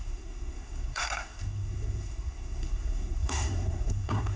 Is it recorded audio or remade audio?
remade